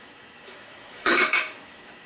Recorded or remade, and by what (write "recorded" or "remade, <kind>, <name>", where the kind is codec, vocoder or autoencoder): remade, autoencoder, DAC-VAE